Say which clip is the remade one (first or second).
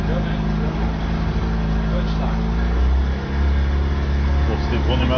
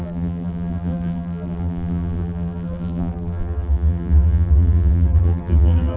second